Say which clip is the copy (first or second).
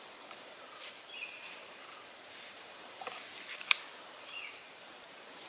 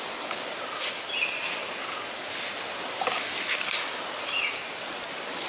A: first